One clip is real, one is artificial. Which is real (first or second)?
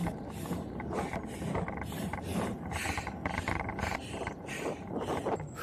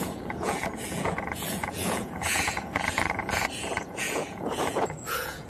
first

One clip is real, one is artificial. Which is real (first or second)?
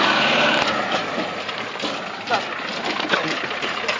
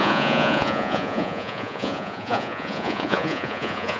first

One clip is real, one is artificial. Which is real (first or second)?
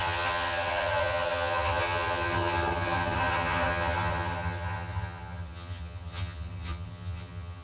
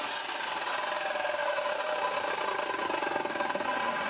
second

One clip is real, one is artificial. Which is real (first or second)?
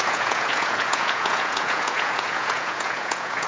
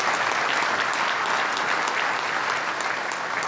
second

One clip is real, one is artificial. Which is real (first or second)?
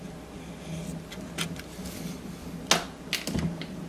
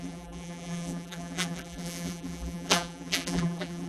first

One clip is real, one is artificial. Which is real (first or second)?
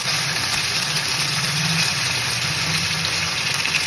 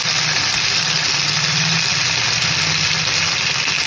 second